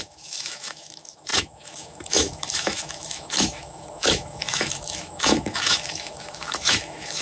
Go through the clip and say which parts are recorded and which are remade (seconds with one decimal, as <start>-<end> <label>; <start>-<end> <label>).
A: 0.0-7.2 remade